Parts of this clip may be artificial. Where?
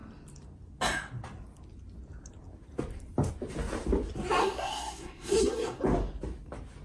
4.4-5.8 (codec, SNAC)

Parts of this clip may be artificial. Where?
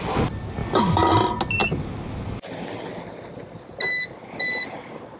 none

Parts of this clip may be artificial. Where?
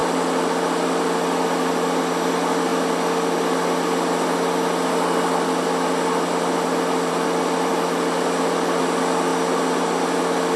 none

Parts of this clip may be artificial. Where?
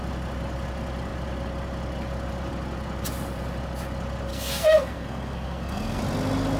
4.3-6.0 (codec, SNAC)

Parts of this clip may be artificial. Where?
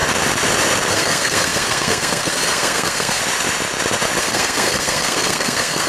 0.9-3.2 (codec, SNAC); 4.2-5.9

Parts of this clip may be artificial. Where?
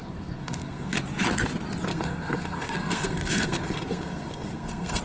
0.0-1.0 (codec, SNAC); 1.9-5.0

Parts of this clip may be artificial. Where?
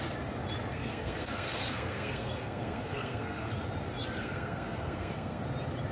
0.7-3.5 (codec, SNAC); 4.2-5.4